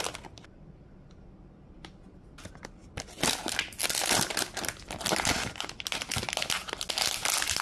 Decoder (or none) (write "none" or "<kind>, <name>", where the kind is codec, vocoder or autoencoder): none